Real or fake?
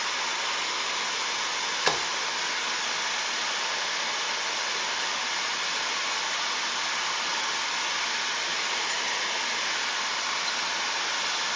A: real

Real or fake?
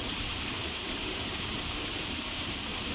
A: fake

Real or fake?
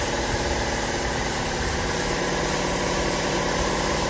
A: fake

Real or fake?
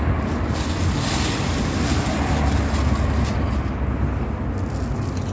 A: real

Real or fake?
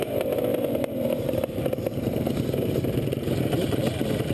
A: fake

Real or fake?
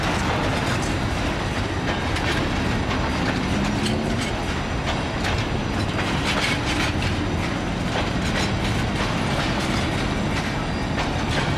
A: real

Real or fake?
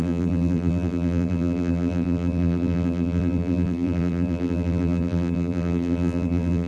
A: fake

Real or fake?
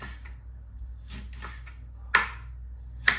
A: real